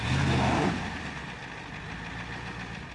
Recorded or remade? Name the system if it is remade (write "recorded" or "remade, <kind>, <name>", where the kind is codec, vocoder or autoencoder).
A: recorded